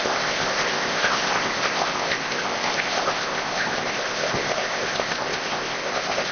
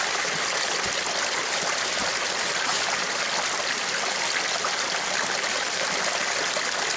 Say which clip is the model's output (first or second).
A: first